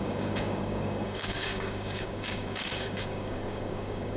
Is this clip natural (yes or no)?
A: no